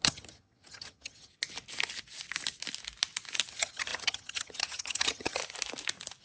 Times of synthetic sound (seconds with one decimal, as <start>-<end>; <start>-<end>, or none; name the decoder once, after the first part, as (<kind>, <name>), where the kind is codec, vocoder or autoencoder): 0.0-1.3 (vocoder, HiFi-GAN); 3.5-5.4

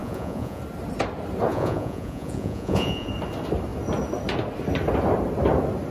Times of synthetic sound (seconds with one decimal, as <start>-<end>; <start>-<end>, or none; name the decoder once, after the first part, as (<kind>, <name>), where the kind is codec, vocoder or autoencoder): 0.0-0.6 (vocoder, Vocos); 1.5-3.1

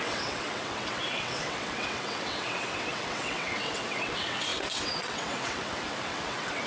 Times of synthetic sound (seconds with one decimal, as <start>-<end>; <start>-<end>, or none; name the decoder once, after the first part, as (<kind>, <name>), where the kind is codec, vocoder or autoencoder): 0.0-6.7 (vocoder, WaveNeXt)

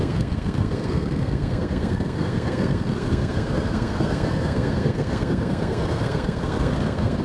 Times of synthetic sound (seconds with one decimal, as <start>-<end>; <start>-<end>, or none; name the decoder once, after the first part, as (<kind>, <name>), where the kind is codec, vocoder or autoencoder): 0.0-7.2 (codec, SNAC)

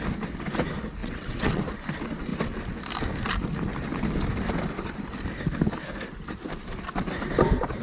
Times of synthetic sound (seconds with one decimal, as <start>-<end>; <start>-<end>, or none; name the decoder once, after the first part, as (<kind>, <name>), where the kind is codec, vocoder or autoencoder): 1.0-1.6 (vocoder, WaveNeXt)